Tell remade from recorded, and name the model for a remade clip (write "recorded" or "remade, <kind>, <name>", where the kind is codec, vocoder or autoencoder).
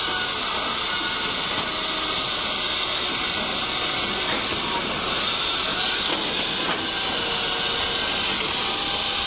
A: recorded